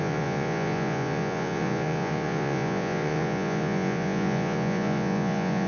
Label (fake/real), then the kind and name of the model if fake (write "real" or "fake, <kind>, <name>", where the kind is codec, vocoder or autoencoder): fake, vocoder, Vocos